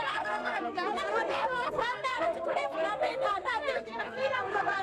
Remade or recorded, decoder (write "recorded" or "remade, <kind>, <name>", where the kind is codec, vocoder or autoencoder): remade, codec, SNAC